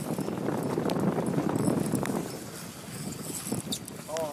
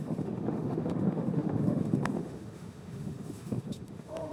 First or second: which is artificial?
second